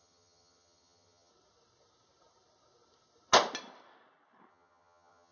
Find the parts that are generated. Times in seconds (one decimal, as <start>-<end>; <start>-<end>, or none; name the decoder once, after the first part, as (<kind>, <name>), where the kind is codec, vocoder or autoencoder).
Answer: 0.0-1.3 (vocoder, HiFi-GAN); 4.5-5.3